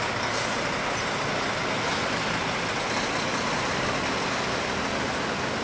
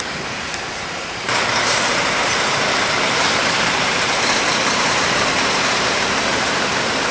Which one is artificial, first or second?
second